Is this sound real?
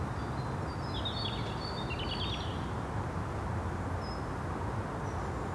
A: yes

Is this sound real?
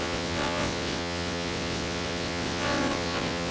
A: no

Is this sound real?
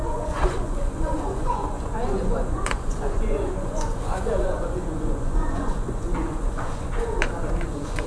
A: no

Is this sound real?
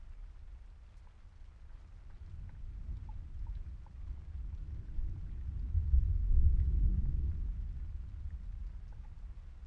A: yes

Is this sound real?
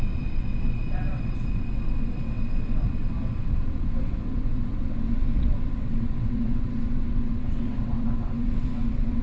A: no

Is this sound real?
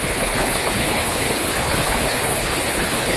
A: no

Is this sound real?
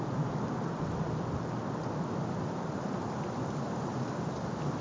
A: no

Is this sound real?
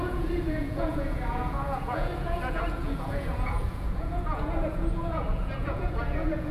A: no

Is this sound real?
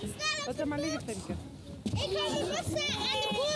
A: yes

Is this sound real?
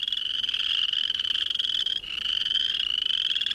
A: yes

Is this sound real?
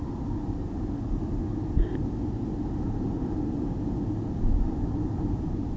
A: yes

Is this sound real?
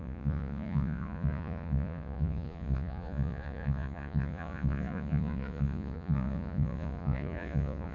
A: no